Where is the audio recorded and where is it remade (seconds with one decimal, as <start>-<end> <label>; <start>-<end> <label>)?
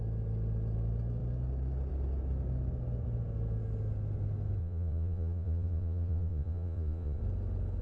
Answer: 0.0-4.6 recorded; 4.6-7.2 remade; 7.2-7.8 recorded